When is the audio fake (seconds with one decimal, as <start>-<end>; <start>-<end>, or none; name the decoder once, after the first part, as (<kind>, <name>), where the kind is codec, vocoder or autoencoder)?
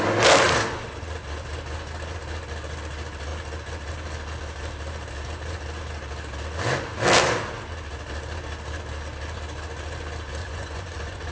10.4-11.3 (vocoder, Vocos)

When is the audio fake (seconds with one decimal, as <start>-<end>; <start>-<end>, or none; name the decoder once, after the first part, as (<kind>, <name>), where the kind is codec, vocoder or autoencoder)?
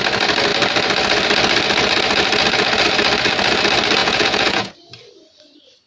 4.0-4.7 (vocoder, Vocos)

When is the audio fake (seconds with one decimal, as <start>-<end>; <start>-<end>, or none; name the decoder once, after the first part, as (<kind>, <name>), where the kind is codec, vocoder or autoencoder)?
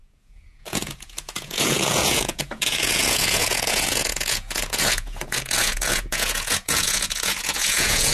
0.0-8.1 (vocoder, Vocos)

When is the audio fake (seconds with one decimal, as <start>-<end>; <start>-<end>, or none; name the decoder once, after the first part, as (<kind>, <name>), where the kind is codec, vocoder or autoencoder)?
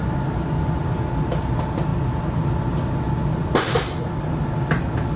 none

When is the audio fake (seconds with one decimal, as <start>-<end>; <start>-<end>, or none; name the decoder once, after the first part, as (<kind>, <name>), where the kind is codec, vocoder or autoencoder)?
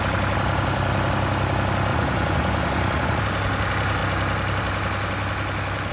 1.9-3.2 (vocoder, Vocos)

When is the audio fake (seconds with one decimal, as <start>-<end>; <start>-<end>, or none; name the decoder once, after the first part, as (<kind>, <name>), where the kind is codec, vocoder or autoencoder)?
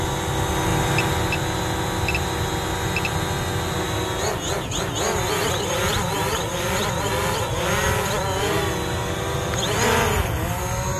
none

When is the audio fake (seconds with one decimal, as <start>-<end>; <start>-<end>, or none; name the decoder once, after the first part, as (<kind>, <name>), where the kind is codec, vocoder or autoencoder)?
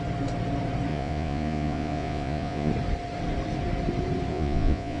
0.9-2.7 (vocoder, Vocos); 4.3-5.0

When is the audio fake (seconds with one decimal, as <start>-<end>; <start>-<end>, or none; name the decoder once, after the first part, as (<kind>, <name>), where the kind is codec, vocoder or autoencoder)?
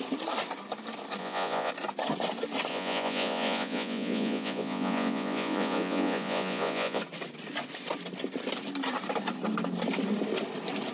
1.2-1.7 (vocoder, Vocos); 2.7-7.0